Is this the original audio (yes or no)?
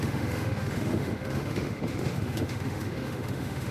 no